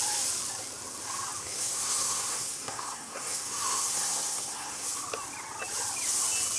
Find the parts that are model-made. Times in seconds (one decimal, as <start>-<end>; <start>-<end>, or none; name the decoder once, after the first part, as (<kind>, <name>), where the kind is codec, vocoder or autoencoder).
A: 1.4-4.9 (codec, SNAC)